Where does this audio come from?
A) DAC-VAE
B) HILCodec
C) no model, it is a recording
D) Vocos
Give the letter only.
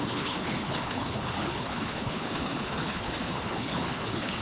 B